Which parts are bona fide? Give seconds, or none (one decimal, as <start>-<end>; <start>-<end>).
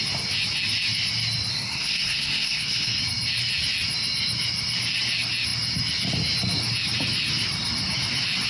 0.0-1.5; 3.0-8.5